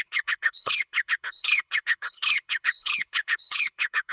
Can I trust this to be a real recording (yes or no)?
no